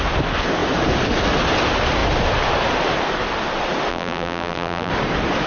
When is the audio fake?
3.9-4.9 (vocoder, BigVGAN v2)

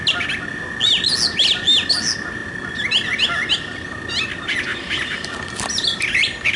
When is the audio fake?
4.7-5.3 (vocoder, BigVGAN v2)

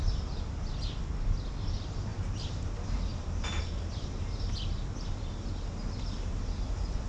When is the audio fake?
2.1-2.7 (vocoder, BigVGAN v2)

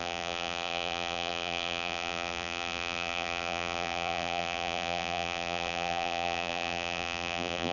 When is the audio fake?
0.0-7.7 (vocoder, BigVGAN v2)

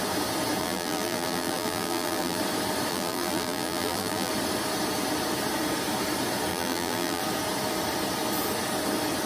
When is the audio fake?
0.6-2.4 (vocoder, BigVGAN v2); 2.9-4.3; 6.5-7.2

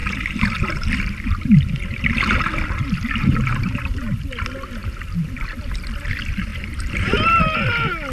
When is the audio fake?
0.0-0.9 (vocoder, BigVGAN v2); 3.3-4.2; 4.8-5.5; 6.5-7.4

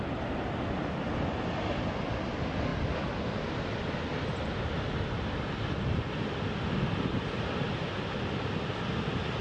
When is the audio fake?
2.7-5.5 (vocoder, BigVGAN v2)

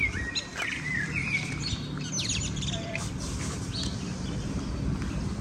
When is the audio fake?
0.5-3.7 (vocoder, BigVGAN v2)